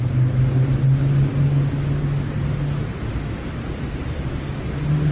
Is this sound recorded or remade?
recorded